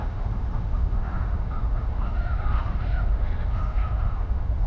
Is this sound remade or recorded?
remade